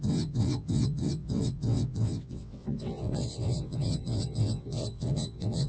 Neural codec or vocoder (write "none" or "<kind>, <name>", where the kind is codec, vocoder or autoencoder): vocoder, WaveNeXt